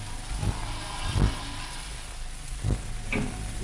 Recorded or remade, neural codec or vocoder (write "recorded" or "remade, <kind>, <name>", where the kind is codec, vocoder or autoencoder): recorded